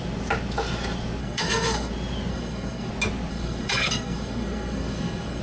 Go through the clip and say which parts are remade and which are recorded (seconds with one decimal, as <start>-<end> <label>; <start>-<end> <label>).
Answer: 0.0-1.2 recorded; 1.2-1.9 remade; 1.9-2.3 recorded; 2.3-2.9 remade; 2.9-3.3 recorded; 3.3-5.4 remade